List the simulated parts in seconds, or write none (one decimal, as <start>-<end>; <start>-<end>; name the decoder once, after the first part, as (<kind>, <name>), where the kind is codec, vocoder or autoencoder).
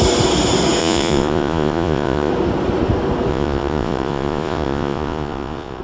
0.8-2.3 (vocoder, Vocos); 3.3-5.8